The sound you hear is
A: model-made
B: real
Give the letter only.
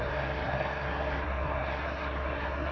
A